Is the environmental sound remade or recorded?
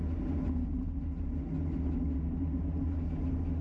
recorded